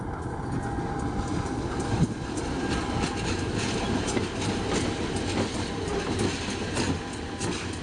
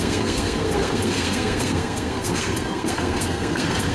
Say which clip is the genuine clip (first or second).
first